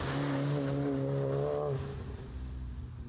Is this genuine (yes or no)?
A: yes